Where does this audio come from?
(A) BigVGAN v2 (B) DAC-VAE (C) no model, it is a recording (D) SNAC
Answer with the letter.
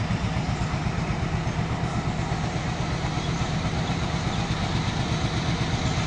A